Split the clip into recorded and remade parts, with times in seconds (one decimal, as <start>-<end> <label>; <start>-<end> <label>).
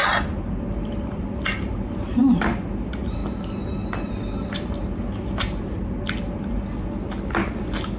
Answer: 0.0-8.0 recorded